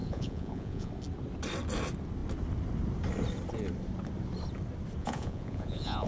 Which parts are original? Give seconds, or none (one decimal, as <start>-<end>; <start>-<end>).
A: 0.9-5.0

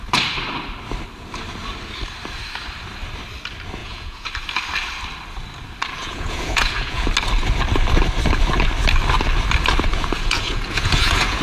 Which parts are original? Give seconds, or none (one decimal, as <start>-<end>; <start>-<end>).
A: 0.0-3.8; 4.3-6.0; 7.1-9.9

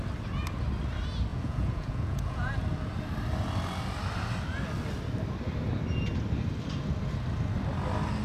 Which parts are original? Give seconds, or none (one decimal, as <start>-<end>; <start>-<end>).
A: 0.0-1.3; 2.5-8.2

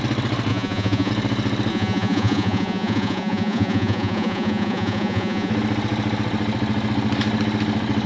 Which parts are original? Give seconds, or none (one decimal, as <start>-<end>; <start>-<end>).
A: 0.0-0.5; 1.1-1.7; 5.5-8.1

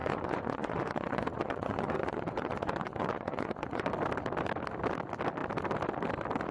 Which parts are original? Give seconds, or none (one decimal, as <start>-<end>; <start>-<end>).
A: 3.9-6.5

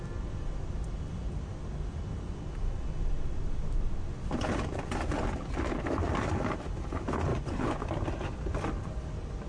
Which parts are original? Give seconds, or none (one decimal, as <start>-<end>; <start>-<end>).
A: 0.0-7.3; 7.8-9.5